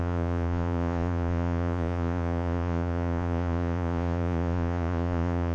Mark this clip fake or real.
fake